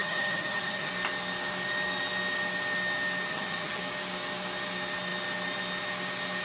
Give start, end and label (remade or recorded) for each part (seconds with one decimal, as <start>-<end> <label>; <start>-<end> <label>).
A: 0.0-0.9 remade; 0.9-3.3 recorded; 3.3-3.8 remade; 3.8-6.4 recorded

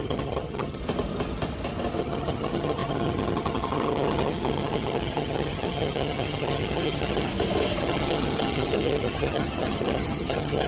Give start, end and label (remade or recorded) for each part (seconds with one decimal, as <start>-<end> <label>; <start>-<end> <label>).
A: 0.0-0.8 remade; 0.8-2.0 recorded; 2.0-7.3 remade; 7.3-7.8 recorded; 7.8-10.7 remade